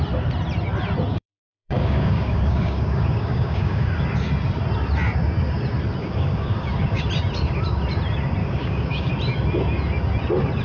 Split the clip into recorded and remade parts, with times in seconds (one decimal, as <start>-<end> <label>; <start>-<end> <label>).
0.0-1.1 recorded; 1.1-3.9 remade; 3.9-6.0 recorded; 6.0-7.0 remade; 7.0-8.4 recorded; 8.4-9.1 remade; 9.1-10.6 recorded

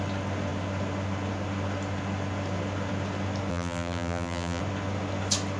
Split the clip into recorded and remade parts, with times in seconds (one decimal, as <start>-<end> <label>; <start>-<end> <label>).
0.0-3.5 recorded; 3.5-4.6 remade; 4.6-5.6 recorded

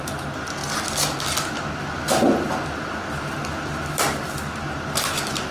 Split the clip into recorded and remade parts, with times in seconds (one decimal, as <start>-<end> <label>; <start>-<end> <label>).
0.0-0.6 remade; 0.6-3.9 recorded; 3.9-5.5 remade

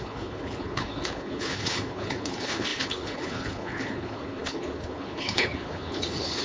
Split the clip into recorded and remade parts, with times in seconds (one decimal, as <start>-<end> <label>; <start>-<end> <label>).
0.0-6.4 remade

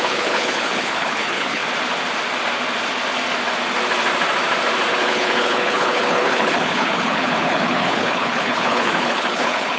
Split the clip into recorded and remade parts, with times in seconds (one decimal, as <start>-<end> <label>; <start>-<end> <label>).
0.0-1.6 remade; 1.6-4.9 recorded; 4.9-9.8 remade

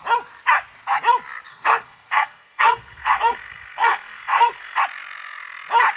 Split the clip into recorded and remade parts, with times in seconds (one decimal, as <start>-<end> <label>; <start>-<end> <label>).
0.0-1.5 recorded; 1.5-4.8 remade; 4.8-6.0 recorded

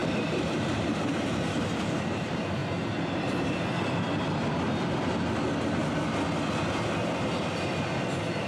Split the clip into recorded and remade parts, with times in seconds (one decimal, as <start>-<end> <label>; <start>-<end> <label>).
0.0-2.0 remade; 2.0-8.5 recorded

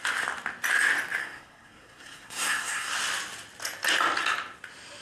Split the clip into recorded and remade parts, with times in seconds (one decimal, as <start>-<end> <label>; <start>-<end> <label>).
0.0-1.2 recorded; 1.2-2.9 remade; 2.9-5.0 recorded